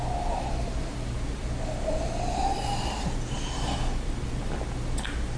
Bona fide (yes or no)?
yes